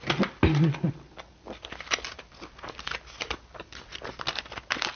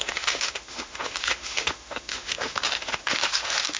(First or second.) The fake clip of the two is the second